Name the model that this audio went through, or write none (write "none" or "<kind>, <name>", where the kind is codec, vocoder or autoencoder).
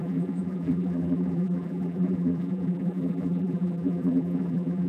vocoder, BigVGAN v2